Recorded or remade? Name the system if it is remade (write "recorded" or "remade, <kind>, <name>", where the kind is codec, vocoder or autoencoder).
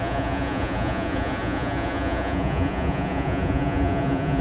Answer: remade, vocoder, Vocos